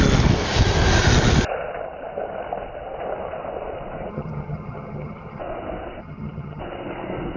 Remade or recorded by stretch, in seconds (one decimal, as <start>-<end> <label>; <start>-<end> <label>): 0.0-4.1 recorded; 4.1-5.4 remade; 5.4-6.0 recorded; 6.0-6.6 remade; 6.6-7.4 recorded